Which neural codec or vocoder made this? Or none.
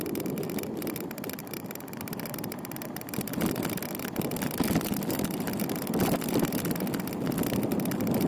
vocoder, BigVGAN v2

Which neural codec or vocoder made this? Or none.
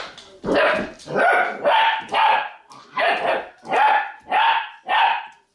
none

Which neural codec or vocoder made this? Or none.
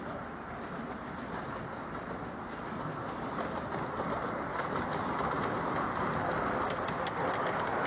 none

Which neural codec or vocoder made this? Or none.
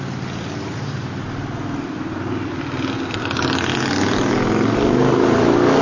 none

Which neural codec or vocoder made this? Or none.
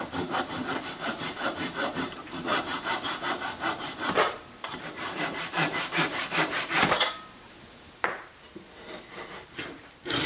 vocoder, BigVGAN v2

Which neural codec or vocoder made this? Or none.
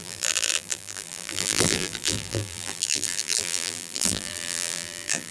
vocoder, BigVGAN v2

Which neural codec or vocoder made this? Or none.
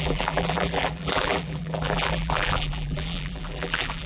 vocoder, BigVGAN v2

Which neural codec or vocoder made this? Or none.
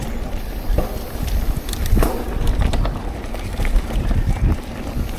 none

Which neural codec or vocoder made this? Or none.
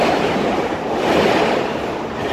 vocoder, BigVGAN v2